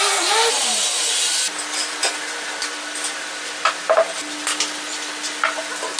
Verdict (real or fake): real